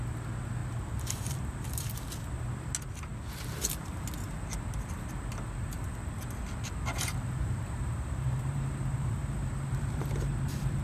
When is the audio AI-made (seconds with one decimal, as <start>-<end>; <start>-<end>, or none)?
0.6-2.3; 6.9-10.3